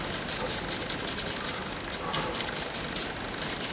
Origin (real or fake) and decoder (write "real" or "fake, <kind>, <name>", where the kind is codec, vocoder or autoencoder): real